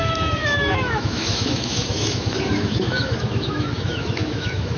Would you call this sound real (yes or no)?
no